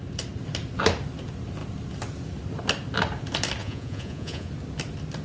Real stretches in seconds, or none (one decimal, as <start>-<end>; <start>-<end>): 0.0-3.6; 4.5-5.2